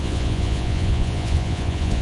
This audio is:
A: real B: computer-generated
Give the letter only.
B